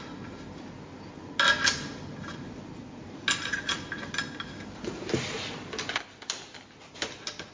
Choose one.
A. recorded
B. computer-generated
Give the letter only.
A